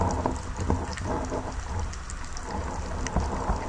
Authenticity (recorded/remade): recorded